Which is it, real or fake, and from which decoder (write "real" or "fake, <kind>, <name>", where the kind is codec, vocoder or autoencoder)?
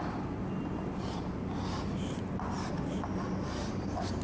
real